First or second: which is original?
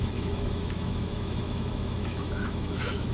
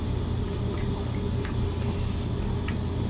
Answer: second